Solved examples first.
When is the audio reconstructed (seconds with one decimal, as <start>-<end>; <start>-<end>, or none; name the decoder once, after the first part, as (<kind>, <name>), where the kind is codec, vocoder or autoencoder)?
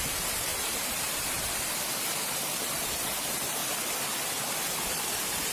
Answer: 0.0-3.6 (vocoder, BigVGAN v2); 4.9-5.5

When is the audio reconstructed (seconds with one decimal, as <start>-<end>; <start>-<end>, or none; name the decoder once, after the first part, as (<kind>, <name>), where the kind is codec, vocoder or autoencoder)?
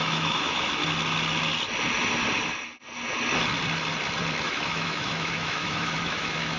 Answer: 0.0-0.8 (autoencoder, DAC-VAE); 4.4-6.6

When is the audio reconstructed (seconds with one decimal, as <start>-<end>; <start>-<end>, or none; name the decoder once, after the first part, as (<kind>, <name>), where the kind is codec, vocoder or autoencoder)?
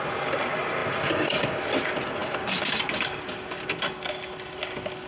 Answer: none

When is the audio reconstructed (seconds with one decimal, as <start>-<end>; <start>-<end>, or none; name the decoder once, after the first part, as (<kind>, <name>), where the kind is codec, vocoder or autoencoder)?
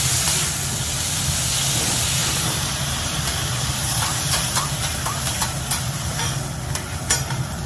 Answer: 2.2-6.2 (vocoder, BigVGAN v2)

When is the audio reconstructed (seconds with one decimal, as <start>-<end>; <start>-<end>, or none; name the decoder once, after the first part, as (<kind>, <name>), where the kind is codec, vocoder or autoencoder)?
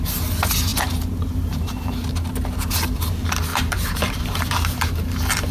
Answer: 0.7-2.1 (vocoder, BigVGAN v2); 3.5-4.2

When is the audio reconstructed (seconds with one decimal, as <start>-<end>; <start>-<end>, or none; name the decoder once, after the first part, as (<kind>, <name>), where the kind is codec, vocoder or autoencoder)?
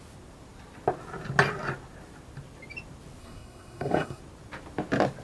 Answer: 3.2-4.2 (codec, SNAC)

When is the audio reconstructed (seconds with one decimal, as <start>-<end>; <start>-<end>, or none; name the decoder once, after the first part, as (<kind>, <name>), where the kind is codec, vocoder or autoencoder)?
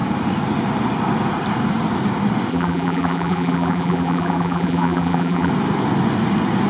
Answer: 2.5-5.5 (vocoder, BigVGAN v2)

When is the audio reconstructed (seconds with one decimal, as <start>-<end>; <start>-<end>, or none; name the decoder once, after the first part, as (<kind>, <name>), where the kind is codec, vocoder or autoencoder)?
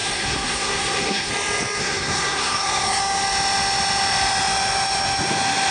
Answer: 0.0-1.3 (codec, SNAC); 1.8-3.0